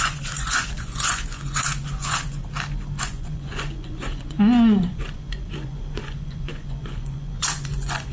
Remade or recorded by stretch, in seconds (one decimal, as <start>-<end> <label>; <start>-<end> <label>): 0.0-2.4 remade; 2.4-3.0 recorded; 3.0-8.1 remade